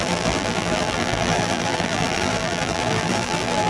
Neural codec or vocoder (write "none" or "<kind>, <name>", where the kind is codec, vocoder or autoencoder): vocoder, BigVGAN v2